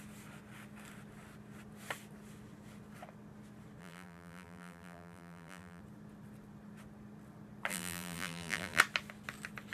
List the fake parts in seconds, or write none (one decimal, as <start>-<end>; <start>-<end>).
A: 3.8-5.8; 7.7-8.8